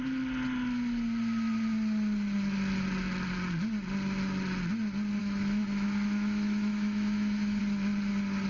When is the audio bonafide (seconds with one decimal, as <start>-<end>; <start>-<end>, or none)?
0.0-5.2; 7.6-8.5